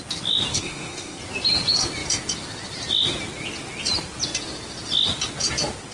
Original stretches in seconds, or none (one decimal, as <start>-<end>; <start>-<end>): 0.0-0.5; 1.2-5.9